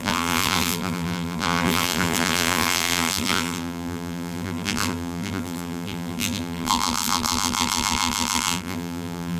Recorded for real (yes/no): no